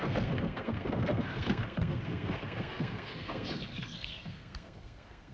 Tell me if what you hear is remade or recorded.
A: remade